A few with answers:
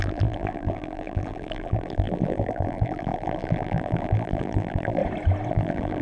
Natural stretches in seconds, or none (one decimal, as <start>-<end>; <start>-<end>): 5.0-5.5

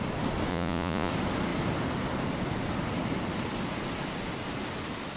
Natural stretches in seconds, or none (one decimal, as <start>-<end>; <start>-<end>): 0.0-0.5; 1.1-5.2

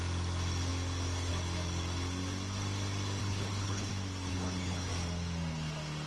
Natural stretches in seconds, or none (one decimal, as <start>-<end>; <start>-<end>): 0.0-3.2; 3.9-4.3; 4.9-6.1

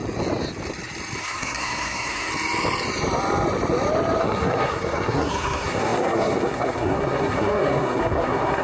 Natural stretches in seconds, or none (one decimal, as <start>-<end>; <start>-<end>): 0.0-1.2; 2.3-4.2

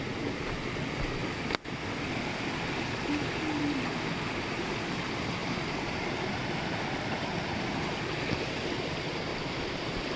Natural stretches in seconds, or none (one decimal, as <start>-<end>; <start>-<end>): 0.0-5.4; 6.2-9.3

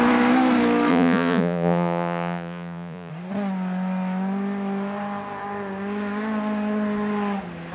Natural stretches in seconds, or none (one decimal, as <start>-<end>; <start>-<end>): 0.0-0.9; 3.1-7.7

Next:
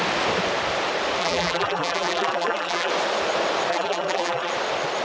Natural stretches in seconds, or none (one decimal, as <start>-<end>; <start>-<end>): 0.0-1.2; 2.9-3.7; 4.5-5.0

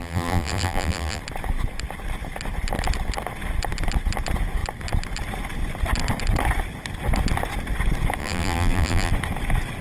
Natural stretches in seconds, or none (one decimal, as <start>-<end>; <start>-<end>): 1.2-8.2; 9.1-9.8